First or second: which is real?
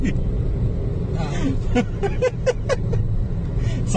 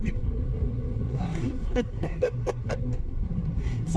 first